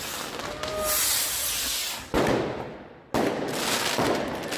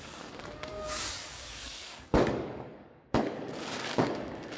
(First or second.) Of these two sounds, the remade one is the second